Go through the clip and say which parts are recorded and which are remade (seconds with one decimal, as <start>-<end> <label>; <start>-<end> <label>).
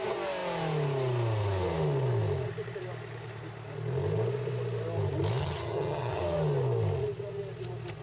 0.0-5.4 recorded; 5.4-6.2 remade; 6.2-8.0 recorded